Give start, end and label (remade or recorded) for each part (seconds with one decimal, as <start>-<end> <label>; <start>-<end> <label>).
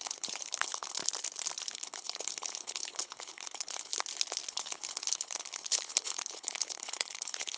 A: 0.0-1.0 remade; 1.0-1.7 recorded; 1.7-3.9 remade; 3.9-4.5 recorded; 4.5-7.6 remade